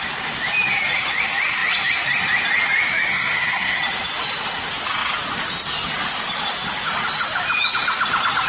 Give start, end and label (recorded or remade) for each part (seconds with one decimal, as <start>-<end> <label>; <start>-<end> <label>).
0.0-3.1 recorded; 3.1-3.8 remade; 3.8-8.5 recorded

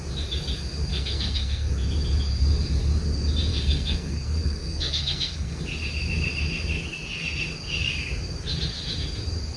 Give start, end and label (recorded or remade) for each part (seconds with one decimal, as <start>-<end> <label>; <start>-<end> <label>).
0.0-0.9 recorded; 0.9-1.7 remade; 1.7-3.5 recorded; 3.5-5.6 remade; 5.6-9.6 recorded

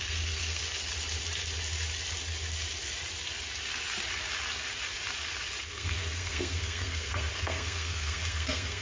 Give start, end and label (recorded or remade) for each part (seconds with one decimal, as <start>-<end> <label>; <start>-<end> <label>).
0.0-0.6 remade; 0.6-5.6 recorded; 5.6-8.8 remade

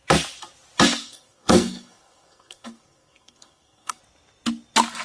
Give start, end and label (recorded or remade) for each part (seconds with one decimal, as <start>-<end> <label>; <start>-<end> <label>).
0.0-1.0 recorded; 1.0-4.0 remade; 4.0-5.0 recorded

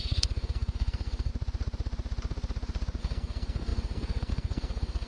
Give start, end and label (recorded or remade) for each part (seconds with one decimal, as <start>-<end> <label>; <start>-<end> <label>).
0.0-1.3 remade; 1.3-3.0 recorded; 3.0-5.1 remade

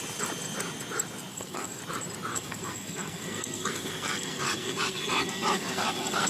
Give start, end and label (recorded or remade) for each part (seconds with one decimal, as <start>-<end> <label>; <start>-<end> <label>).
0.0-1.3 recorded; 1.3-1.8 remade; 1.8-2.3 recorded; 2.3-6.3 remade